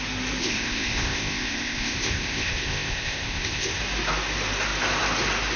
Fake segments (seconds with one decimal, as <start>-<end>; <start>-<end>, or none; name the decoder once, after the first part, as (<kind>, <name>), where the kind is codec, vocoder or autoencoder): 0.4-3.8 (codec, ZipCodec)